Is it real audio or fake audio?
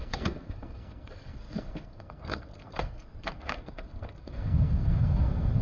fake